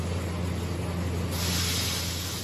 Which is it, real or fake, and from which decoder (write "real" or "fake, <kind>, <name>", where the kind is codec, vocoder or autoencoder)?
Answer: real